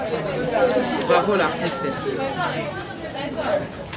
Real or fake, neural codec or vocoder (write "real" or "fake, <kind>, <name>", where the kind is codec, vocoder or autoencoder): real